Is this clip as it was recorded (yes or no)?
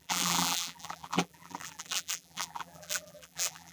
no